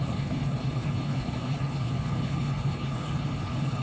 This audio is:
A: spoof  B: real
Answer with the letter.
A